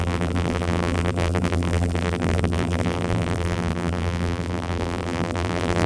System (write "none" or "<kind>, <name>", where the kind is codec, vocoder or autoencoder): vocoder, BigVGAN v2